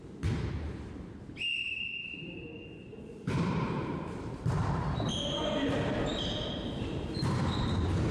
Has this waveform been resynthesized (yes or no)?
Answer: yes